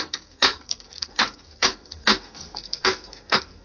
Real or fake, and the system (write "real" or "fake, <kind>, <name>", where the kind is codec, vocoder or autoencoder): fake, codec, SNAC